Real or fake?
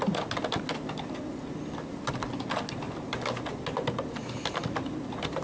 real